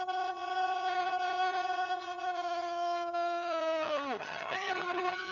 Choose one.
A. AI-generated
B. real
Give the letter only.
A